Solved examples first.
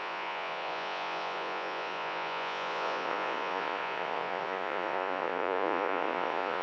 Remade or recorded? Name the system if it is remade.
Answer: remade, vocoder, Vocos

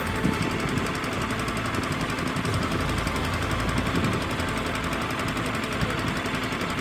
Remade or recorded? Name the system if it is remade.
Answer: recorded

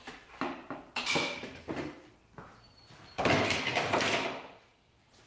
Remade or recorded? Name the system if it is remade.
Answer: recorded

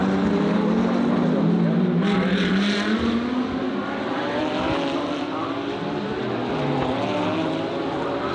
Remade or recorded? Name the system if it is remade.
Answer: recorded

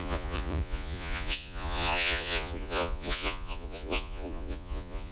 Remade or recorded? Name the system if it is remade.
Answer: remade, vocoder, Vocos